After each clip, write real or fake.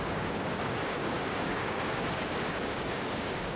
fake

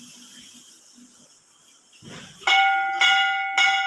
real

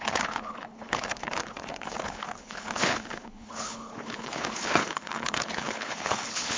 fake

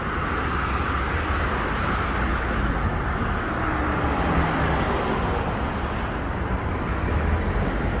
real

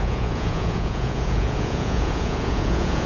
fake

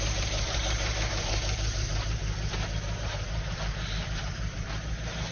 fake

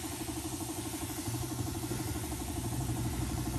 fake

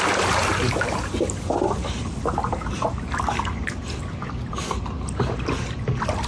real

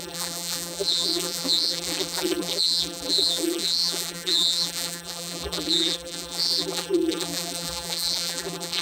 fake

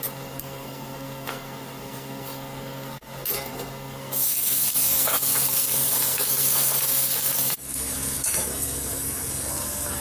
fake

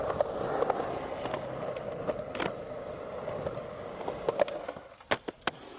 real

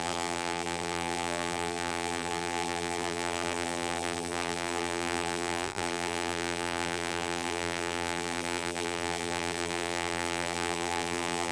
fake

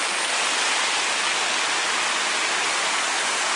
real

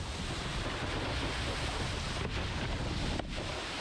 real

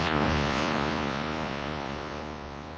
fake